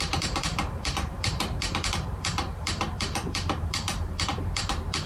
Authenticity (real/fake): fake